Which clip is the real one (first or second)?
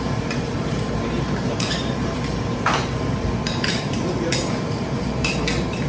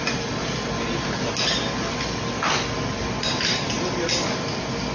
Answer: second